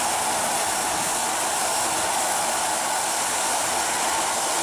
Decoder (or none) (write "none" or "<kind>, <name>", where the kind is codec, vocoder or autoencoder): none